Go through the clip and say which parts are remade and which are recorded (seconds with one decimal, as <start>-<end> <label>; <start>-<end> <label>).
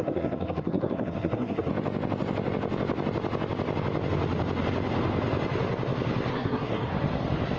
0.0-1.7 remade; 1.7-6.3 recorded; 6.3-6.9 remade; 6.9-7.6 recorded